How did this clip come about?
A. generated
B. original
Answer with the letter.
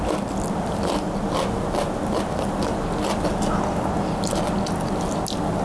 B